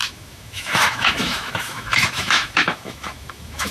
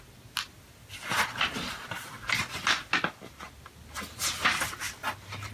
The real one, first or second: second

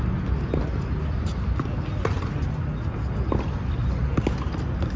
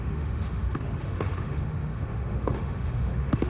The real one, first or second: first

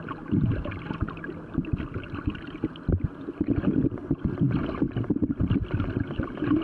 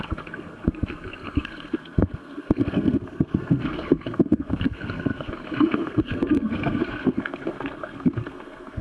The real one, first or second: first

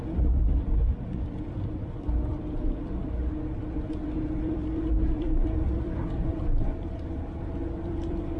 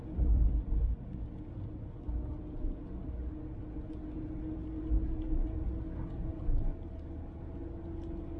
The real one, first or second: second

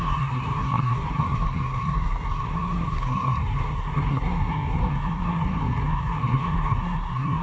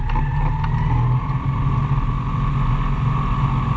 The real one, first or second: second